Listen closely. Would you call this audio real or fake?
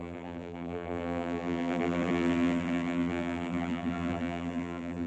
fake